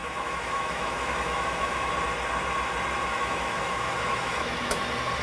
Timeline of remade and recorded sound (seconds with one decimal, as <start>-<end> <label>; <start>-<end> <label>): 0.0-1.9 remade; 1.9-3.1 recorded; 3.1-4.8 remade; 4.8-5.2 recorded